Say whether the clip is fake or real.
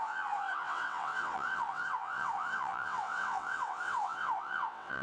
fake